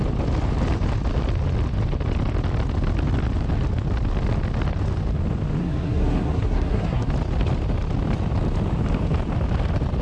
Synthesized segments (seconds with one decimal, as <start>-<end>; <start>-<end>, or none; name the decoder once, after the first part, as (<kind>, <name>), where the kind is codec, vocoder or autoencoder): 5.6-7.1 (codec, SNAC)